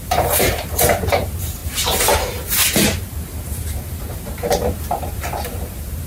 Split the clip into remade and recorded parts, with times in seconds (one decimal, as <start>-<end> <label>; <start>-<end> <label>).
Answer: 0.0-1.6 remade; 1.6-3.4 recorded; 3.4-6.1 remade